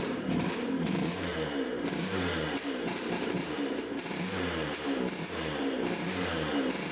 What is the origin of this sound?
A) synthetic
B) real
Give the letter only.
A